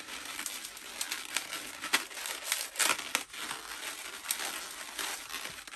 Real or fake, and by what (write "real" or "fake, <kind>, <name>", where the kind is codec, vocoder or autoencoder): real